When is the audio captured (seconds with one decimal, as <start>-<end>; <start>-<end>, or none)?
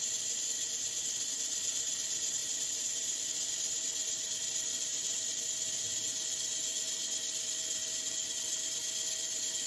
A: 0.0-2.4; 3.2-4.7; 5.3-9.7